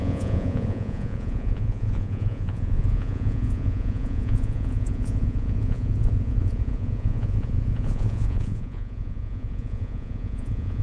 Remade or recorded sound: remade